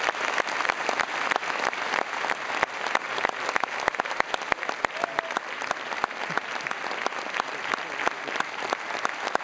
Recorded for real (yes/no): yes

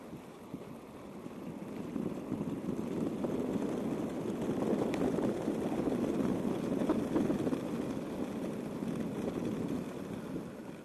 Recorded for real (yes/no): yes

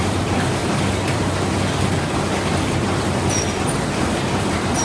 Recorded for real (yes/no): no